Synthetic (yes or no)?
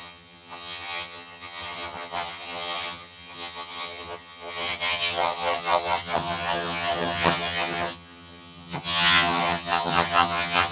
yes